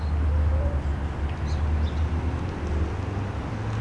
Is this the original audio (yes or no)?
yes